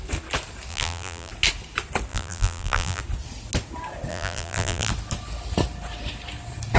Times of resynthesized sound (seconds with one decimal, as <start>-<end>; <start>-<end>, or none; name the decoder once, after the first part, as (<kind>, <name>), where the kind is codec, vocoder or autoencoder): 0.7-1.3 (vocoder, BigVGAN v2); 2.1-3.0; 4.1-4.9

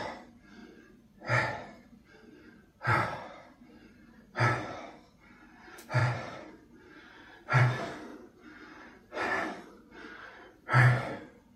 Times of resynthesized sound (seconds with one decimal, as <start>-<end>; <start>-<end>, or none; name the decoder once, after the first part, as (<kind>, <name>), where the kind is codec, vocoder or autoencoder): 0.6-4.1 (vocoder, BigVGAN v2); 6.0-6.5; 8.1-9.7

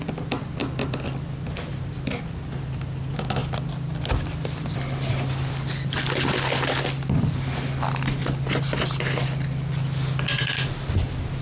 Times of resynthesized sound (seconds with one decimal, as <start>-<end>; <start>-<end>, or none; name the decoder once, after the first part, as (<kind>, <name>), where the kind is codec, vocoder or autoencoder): none